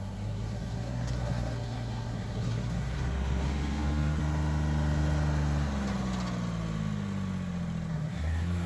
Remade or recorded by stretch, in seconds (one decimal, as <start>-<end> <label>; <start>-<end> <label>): 0.0-4.2 remade; 4.2-7.9 recorded; 7.9-8.7 remade